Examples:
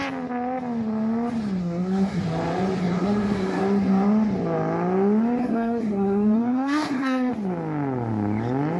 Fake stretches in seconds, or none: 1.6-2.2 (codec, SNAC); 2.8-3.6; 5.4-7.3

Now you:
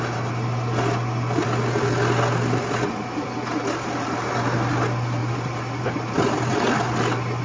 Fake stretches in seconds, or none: none

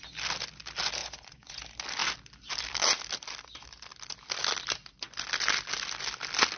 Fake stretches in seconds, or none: 1.0-1.6 (vocoder, Vocos)

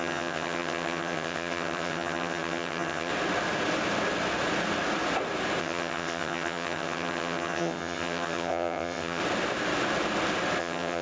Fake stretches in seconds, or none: 0.0-3.1 (vocoder, HiFi-GAN); 5.6-9.2; 10.6-11.0